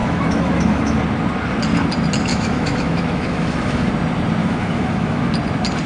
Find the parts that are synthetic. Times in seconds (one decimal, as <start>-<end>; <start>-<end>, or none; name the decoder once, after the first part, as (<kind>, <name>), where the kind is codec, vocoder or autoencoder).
0.0-1.0 (autoencoder, DAC-VAE); 2.3-3.9; 4.4-5.3